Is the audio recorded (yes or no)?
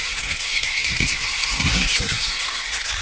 no